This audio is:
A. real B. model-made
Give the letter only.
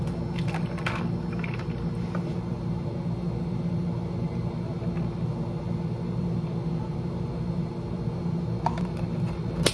A